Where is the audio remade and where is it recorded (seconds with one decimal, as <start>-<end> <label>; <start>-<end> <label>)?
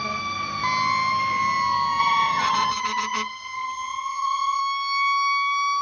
0.0-2.0 recorded; 2.0-4.6 remade; 4.6-5.8 recorded